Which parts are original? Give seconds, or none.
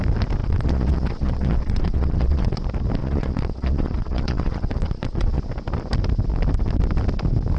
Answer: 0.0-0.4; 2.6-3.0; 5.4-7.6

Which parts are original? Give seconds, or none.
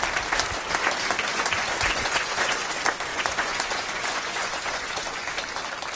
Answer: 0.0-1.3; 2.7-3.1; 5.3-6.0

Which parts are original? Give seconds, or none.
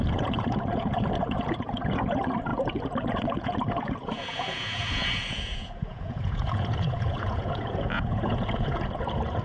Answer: none